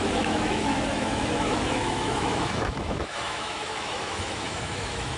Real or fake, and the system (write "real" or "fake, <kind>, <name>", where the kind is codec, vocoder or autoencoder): fake, autoencoder, DAC-VAE